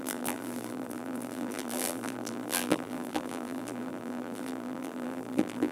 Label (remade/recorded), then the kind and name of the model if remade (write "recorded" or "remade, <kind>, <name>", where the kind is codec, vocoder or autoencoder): remade, vocoder, BigVGAN v2